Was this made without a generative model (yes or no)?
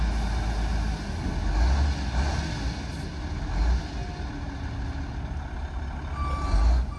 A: yes